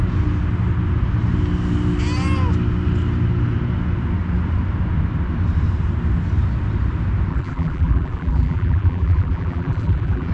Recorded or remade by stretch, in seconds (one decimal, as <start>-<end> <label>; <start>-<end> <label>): 0.0-7.3 recorded; 7.3-10.3 remade

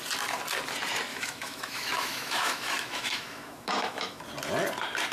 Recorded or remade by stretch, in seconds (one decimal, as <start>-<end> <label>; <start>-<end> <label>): 0.0-1.1 recorded; 1.1-4.2 remade; 4.2-5.1 recorded

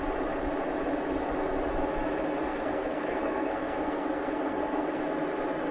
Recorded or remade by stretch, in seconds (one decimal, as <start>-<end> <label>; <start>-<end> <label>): 0.0-2.4 recorded; 2.4-5.0 remade; 5.0-5.7 recorded

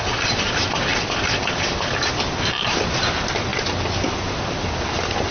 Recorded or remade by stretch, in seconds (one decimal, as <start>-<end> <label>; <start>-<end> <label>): 0.0-5.3 recorded